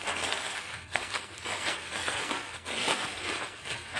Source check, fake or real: fake